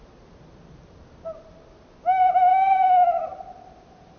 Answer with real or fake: real